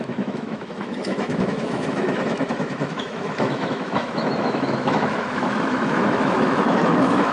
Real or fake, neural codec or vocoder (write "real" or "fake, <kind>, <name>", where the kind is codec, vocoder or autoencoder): fake, autoencoder, DAC-VAE